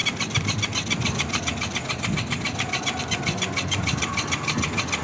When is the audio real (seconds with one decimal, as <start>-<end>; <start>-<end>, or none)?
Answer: 0.0-5.0